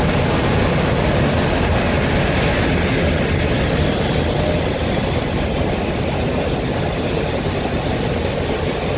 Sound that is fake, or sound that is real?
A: real